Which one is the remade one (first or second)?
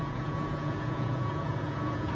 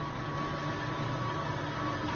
first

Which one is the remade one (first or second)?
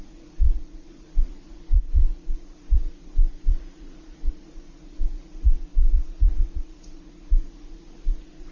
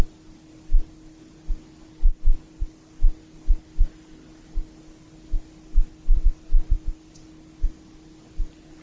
first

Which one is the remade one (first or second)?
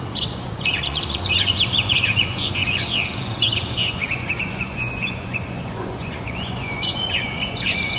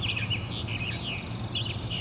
first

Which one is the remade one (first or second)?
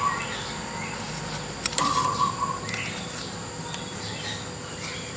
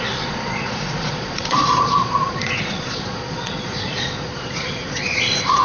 second